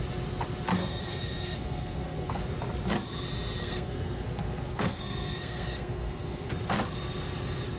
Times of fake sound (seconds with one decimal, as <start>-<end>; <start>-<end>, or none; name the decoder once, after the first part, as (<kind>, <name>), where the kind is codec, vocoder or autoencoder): 0.8-2.4 (codec, SNAC); 3.6-6.5